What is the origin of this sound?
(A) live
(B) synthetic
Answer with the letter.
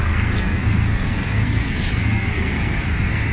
B